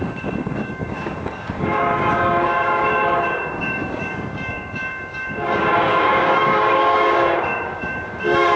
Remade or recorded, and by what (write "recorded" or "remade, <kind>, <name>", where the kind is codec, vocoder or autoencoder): remade, codec, DAC